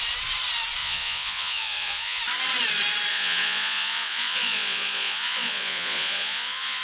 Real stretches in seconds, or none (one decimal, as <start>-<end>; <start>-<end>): 0.0-0.8; 2.2-3.1